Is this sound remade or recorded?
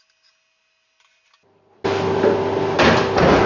recorded